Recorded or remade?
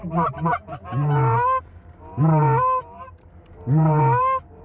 remade